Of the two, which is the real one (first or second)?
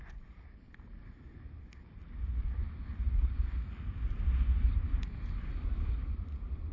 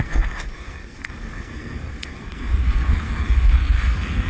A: first